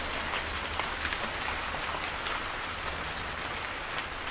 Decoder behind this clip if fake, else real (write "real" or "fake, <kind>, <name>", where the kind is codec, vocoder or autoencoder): real